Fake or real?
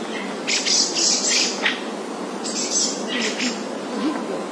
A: real